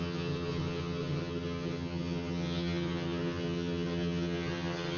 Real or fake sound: fake